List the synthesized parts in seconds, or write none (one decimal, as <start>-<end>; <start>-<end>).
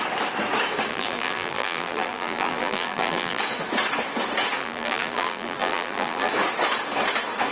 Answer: 0.9-3.4; 4.6-6.3